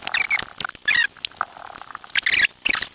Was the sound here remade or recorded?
recorded